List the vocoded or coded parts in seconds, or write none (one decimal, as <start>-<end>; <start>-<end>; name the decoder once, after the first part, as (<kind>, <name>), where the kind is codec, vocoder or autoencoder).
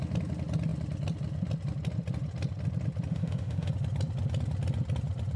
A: 3.1-3.7 (autoencoder, DAC-VAE)